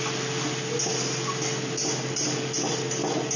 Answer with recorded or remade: recorded